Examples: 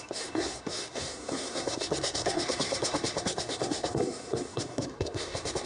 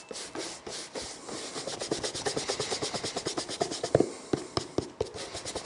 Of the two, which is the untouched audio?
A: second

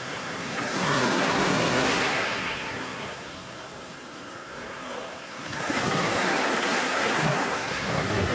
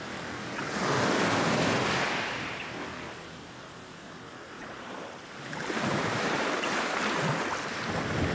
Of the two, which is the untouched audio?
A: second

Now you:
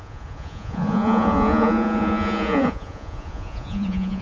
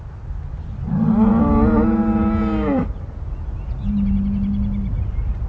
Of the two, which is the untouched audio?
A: second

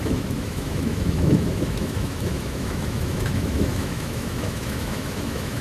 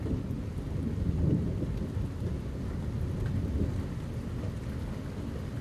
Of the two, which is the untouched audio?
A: second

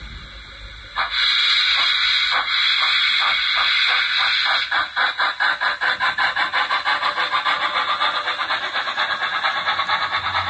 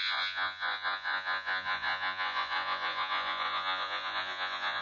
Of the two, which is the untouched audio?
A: first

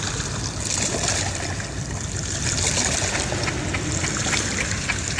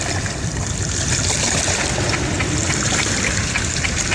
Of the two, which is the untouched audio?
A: first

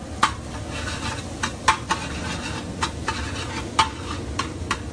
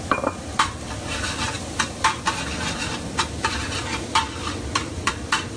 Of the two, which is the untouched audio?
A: first